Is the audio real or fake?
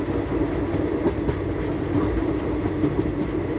real